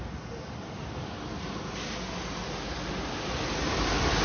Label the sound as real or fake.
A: real